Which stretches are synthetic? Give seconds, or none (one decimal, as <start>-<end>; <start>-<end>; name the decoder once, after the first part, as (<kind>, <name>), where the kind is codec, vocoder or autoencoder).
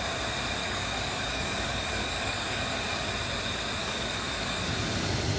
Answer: 0.6-3.1 (codec, DAC); 3.8-4.7